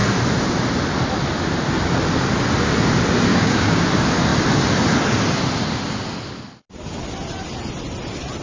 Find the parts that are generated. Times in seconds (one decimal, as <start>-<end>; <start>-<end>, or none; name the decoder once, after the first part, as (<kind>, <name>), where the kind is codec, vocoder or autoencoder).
3.3-3.8 (codec, DAC)